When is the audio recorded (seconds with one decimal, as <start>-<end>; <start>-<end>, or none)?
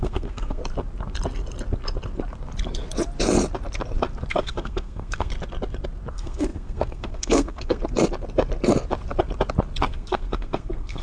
0.6-4.3; 5.3-6.1; 7.8-9.8